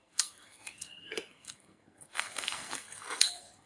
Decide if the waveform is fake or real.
fake